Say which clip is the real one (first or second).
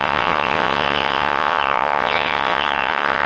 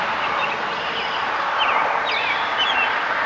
second